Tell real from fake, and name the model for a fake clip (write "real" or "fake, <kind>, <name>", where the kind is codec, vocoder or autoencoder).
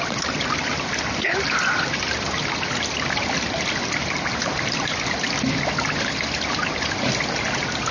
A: real